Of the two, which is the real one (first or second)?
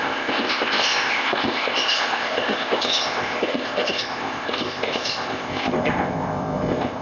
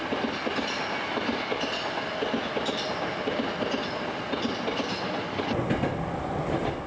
second